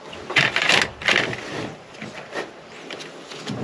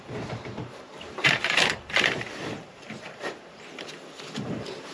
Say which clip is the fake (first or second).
second